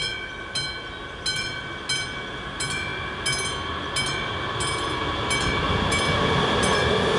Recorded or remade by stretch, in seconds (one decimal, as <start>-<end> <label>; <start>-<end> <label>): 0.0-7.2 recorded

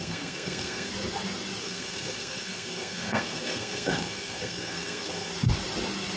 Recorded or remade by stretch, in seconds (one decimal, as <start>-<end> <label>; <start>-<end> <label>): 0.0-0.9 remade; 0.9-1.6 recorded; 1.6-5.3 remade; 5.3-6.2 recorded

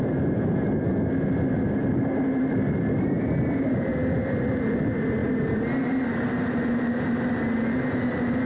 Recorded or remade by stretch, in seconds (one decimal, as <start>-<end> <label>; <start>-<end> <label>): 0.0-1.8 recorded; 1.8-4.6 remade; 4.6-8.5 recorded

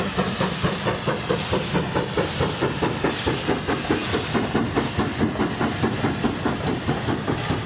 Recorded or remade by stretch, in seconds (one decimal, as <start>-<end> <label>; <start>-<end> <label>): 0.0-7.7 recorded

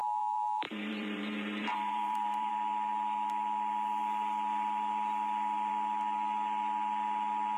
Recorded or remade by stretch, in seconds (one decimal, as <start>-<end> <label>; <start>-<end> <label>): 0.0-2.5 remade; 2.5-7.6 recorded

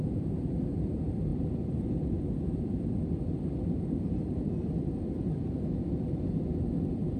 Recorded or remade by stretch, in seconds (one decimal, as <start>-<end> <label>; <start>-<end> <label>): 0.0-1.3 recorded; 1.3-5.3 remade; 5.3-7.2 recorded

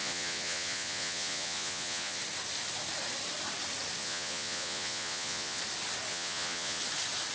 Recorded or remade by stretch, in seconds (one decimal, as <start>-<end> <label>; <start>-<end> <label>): 0.0-2.2 remade; 2.2-4.0 recorded; 4.0-5.6 remade; 5.6-6.1 recorded; 6.1-6.8 remade; 6.8-7.3 recorded